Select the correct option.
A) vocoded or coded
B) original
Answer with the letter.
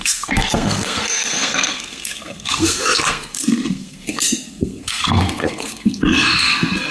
A